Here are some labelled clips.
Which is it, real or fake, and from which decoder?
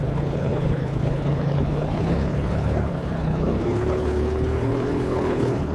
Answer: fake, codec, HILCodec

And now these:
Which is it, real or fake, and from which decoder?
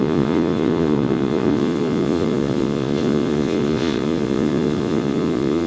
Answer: fake, vocoder, Vocos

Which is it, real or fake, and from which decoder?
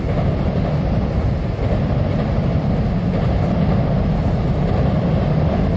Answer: real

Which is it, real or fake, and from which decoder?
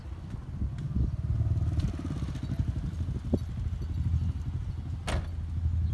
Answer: real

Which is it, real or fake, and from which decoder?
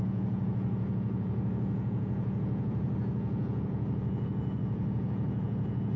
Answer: fake, vocoder, Vocos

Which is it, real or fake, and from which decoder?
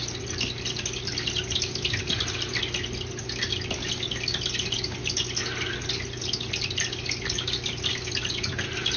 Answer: real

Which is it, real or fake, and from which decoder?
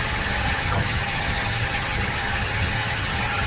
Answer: fake, vocoder, HiFi-GAN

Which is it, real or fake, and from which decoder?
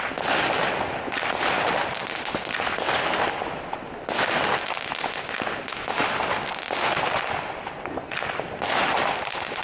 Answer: real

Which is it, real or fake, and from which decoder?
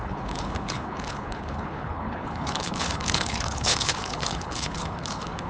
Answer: fake, codec, HILCodec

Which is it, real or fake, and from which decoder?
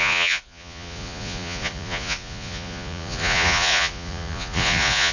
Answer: fake, vocoder, Vocos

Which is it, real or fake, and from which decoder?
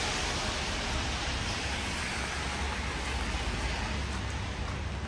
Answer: real